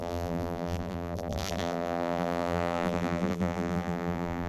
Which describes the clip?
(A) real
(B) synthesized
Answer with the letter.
B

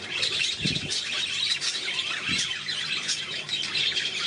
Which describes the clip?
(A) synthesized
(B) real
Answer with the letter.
A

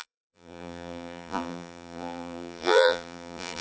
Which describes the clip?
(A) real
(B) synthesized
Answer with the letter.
B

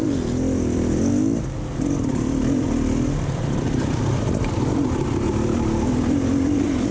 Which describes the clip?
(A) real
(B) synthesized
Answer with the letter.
B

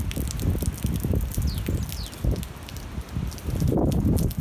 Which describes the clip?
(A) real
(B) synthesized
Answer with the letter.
A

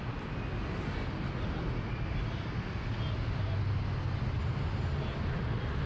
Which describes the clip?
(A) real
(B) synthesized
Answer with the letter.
A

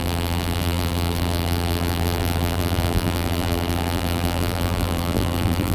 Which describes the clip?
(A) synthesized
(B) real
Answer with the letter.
A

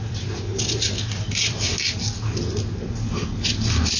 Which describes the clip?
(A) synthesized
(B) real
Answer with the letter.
B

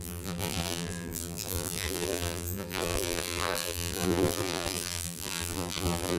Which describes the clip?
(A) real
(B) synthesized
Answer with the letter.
B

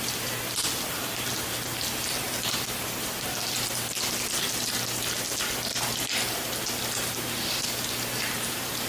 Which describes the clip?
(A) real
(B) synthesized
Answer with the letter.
A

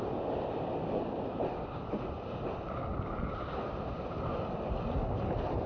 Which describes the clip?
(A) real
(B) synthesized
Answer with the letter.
A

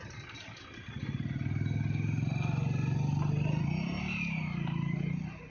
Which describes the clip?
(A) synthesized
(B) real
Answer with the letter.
B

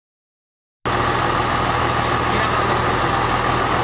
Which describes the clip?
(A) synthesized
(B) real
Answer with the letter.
B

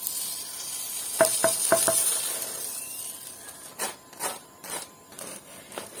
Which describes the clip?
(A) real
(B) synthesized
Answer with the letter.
B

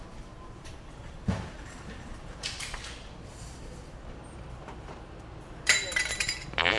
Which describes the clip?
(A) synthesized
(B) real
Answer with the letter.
A